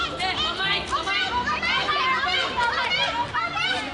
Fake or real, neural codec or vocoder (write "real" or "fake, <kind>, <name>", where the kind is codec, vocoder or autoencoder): real